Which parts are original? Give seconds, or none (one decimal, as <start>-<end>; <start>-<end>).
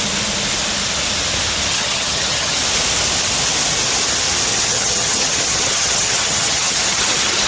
0.0-1.7; 2.6-4.5